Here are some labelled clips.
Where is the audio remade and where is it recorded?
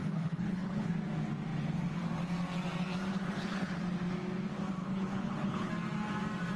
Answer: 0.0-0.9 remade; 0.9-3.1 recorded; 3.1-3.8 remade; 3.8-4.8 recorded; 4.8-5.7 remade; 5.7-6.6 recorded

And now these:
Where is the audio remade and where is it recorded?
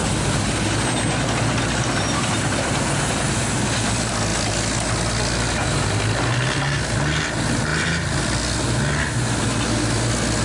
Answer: 0.0-7.7 recorded; 7.7-8.6 remade; 8.6-10.4 recorded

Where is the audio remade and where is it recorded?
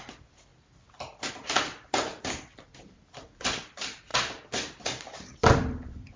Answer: 0.0-0.5 remade; 0.5-1.3 recorded; 1.3-6.2 remade